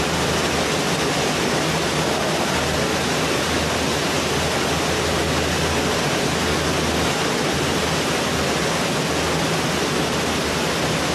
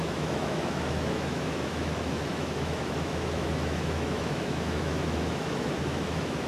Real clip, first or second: first